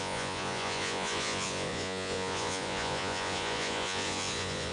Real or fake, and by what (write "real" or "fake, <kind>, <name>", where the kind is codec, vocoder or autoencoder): fake, vocoder, Vocos